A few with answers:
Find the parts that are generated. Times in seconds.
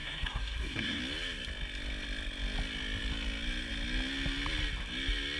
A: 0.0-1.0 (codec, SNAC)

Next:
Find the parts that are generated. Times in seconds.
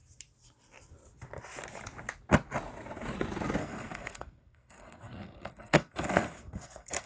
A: 3.6-7.1 (codec, SNAC)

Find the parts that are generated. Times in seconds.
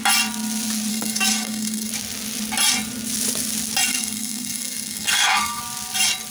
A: 0.9-1.9 (codec, SNAC); 3.9-5.6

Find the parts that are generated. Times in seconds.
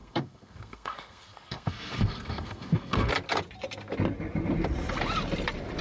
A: 0.0-3.1 (codec, SNAC)